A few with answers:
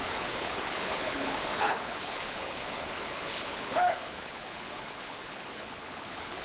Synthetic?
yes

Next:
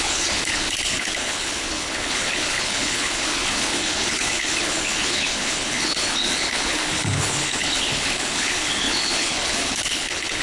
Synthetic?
yes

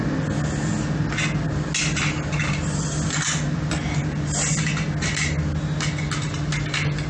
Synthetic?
no